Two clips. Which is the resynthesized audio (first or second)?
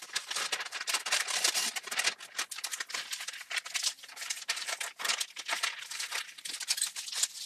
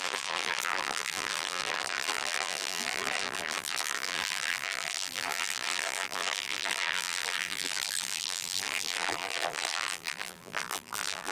second